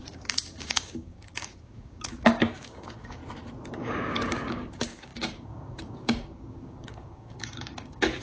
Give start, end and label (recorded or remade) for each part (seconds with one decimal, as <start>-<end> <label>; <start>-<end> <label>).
0.0-3.2 remade; 3.2-3.7 recorded; 3.7-8.2 remade